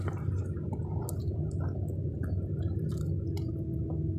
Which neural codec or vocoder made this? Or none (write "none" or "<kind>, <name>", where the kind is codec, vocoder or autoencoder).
none